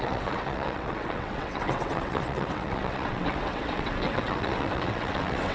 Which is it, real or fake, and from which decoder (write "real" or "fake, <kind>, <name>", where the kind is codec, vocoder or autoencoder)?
fake, vocoder, WaveNeXt